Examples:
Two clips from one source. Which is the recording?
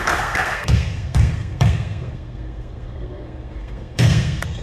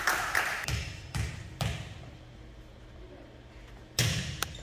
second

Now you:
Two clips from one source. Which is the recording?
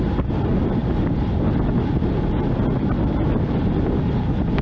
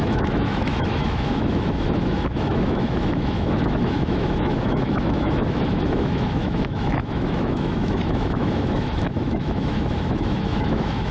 first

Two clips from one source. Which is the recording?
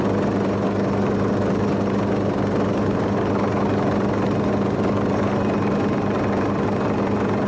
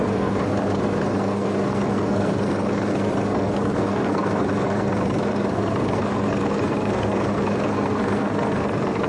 first